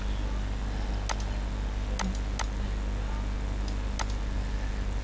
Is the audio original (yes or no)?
yes